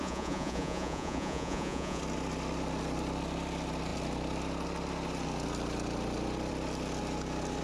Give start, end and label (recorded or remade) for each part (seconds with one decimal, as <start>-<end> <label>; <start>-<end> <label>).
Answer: 0.0-2.0 remade; 2.0-7.6 recorded